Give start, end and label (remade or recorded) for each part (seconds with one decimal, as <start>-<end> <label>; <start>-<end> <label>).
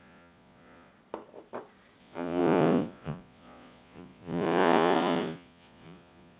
0.0-0.9 remade; 0.9-2.0 recorded; 2.0-6.4 remade